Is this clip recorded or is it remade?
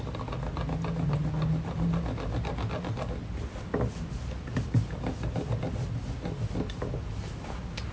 recorded